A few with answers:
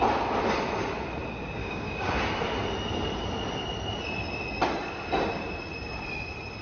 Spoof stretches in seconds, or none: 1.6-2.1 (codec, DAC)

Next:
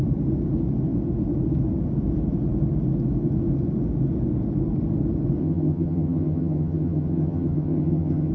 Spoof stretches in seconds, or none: 5.4-8.3 (vocoder, HiFi-GAN)

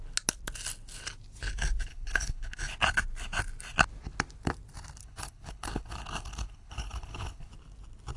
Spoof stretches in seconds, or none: 1.9-2.6 (codec, HILCodec); 5.0-7.5

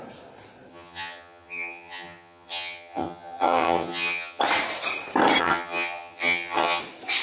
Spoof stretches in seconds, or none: 0.7-4.4 (vocoder, HiFi-GAN); 5.4-6.8

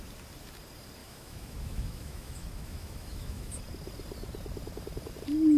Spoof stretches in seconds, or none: 1.0-3.6 (autoencoder, DAC-VAE)